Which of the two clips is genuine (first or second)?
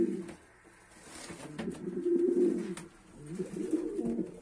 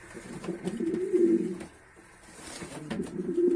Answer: first